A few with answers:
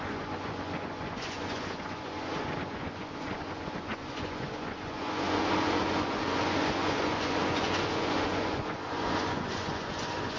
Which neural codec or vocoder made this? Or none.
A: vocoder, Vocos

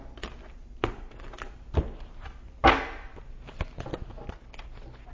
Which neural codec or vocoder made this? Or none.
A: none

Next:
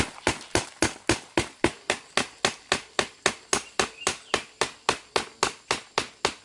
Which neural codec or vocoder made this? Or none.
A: none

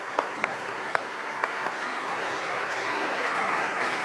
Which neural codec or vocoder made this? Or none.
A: codec, SNAC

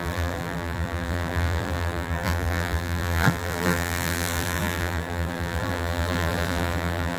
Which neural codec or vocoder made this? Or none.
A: vocoder, BigVGAN v2